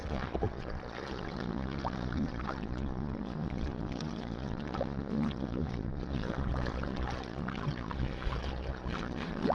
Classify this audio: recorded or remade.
remade